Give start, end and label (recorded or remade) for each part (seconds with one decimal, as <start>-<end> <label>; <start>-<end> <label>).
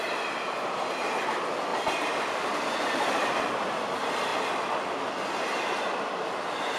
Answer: 0.0-1.7 recorded; 1.7-3.5 remade; 3.5-6.8 recorded